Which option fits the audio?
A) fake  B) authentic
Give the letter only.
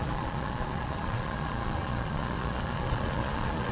A